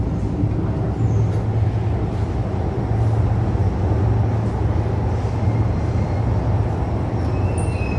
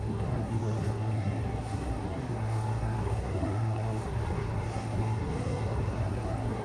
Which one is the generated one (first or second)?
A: second